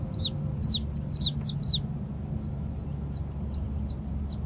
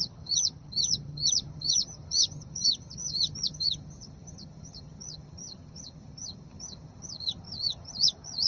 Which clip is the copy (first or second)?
second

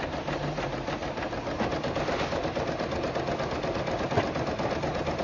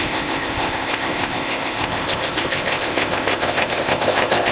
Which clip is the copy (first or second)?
second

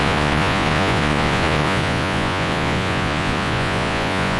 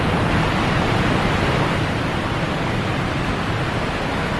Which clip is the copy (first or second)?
first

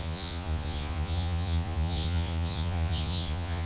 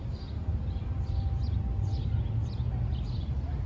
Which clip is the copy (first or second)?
first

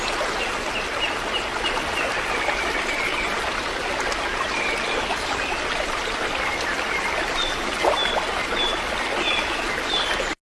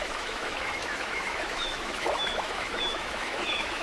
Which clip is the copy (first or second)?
second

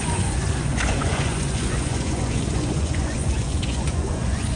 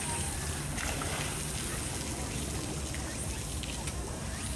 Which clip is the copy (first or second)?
first